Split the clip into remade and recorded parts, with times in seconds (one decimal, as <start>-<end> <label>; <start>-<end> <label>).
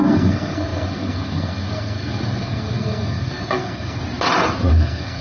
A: 0.0-4.0 remade; 4.0-4.7 recorded; 4.7-5.2 remade